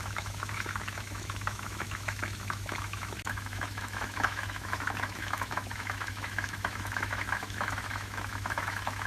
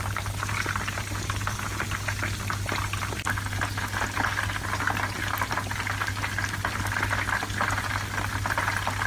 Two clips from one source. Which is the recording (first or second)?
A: second